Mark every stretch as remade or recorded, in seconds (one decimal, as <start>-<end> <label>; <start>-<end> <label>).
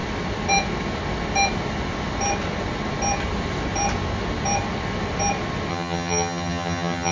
0.0-5.7 recorded; 5.7-7.1 remade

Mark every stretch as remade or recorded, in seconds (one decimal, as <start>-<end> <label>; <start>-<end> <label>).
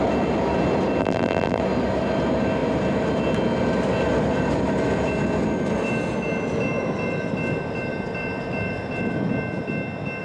0.0-1.0 recorded; 1.0-1.6 remade; 1.6-10.2 recorded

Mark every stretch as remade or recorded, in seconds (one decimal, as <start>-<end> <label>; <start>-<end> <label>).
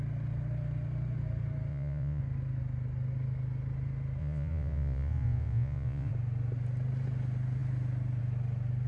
0.0-1.7 recorded; 1.7-2.2 remade; 2.2-4.2 recorded; 4.2-6.1 remade; 6.1-8.9 recorded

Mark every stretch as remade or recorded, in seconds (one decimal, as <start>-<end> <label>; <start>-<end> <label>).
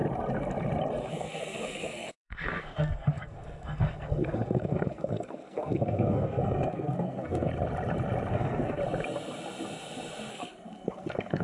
0.0-1.1 recorded; 1.1-7.5 remade; 7.5-8.3 recorded; 8.3-8.8 remade; 8.8-10.3 recorded; 10.3-11.4 remade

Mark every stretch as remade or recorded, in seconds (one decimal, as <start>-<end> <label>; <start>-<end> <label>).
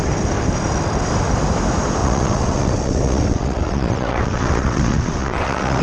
0.0-2.0 recorded; 2.0-5.8 remade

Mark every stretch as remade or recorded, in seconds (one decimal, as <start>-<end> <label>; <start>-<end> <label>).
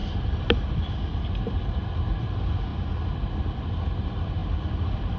0.0-1.0 remade; 1.0-2.7 recorded; 2.7-3.6 remade; 3.6-4.4 recorded; 4.4-5.2 remade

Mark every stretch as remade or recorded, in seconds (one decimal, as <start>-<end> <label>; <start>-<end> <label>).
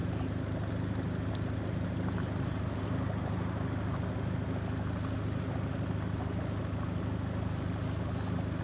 0.0-8.6 recorded